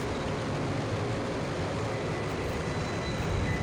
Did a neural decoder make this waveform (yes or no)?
no